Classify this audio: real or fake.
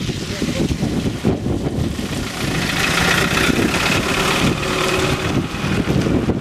real